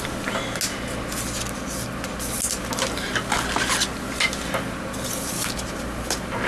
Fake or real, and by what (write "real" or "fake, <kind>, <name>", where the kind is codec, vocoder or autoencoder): real